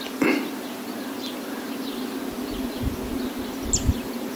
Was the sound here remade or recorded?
recorded